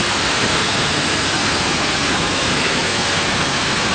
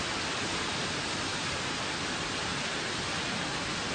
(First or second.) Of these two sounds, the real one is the second